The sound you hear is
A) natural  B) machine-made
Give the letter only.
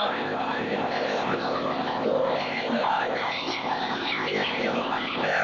B